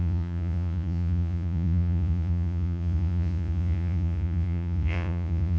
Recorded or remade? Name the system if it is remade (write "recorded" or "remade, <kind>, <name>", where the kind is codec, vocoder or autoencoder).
remade, vocoder, Vocos